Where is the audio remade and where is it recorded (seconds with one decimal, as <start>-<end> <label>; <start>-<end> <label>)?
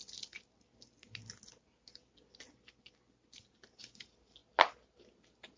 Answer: 0.0-5.6 recorded